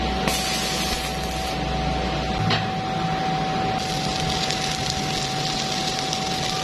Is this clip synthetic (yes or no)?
no